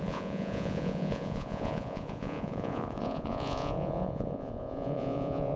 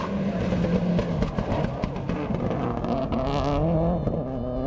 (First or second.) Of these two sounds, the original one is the second